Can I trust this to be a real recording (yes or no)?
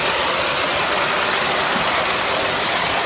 yes